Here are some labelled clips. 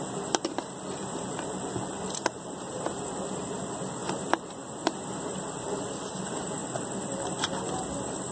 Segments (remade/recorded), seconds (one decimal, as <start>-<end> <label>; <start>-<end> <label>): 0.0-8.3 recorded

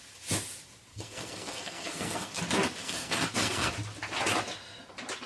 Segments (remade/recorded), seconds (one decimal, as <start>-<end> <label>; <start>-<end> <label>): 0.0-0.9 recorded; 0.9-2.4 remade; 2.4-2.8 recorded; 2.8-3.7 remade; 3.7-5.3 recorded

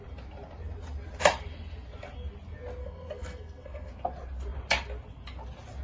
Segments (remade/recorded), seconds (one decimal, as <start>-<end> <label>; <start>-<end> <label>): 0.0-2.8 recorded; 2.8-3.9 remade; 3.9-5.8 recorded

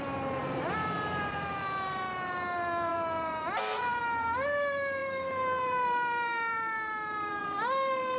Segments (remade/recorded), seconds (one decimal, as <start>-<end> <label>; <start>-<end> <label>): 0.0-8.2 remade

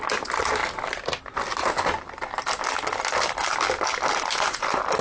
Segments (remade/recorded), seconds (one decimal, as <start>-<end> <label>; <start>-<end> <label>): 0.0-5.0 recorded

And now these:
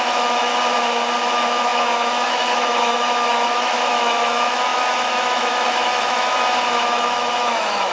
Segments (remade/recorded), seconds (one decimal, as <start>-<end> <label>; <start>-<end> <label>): 0.0-0.5 remade; 0.5-1.2 recorded; 1.2-7.9 remade

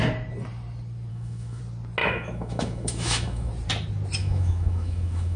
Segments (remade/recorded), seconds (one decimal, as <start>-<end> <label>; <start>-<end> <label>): 0.0-1.1 recorded; 1.1-1.6 remade; 1.6-2.0 recorded; 2.0-3.5 remade; 3.5-4.2 recorded; 4.2-5.4 remade

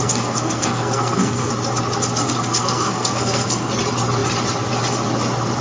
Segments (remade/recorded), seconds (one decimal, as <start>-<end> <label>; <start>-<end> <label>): 0.0-1.5 remade; 1.5-2.2 recorded; 2.2-3.7 remade; 3.7-5.6 recorded